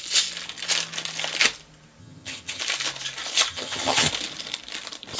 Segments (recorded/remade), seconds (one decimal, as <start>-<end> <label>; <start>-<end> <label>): 0.0-2.0 recorded; 2.0-2.6 remade; 2.6-3.5 recorded; 3.5-4.1 remade; 4.1-5.2 recorded